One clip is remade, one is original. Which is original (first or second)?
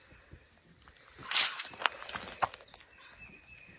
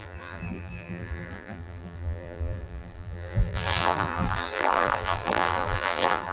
first